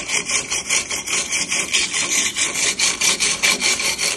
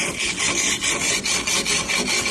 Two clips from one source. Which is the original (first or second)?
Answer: second